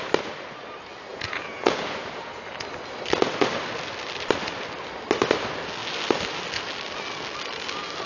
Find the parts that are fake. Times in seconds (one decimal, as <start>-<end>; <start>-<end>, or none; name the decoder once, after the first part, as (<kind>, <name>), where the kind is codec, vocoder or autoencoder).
1.1-2.4 (vocoder, Vocos)